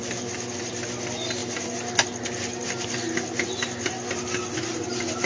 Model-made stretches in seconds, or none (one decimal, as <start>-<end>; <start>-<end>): none